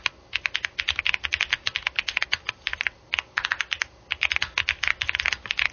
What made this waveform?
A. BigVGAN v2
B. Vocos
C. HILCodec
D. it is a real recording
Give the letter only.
D